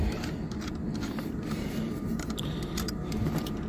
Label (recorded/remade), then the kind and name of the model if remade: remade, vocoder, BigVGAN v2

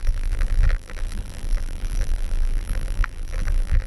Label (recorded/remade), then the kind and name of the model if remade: remade, vocoder, BigVGAN v2